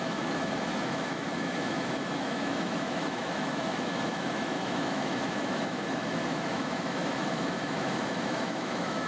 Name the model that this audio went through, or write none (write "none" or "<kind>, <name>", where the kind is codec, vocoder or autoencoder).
autoencoder, DAC-VAE